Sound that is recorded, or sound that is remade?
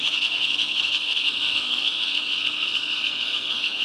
remade